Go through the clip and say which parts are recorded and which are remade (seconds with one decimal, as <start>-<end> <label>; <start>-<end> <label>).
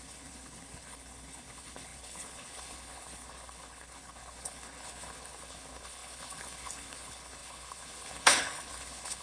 0.0-9.2 remade